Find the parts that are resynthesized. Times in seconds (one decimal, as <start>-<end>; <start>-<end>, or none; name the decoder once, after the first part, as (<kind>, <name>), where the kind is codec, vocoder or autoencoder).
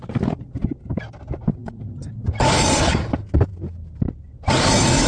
none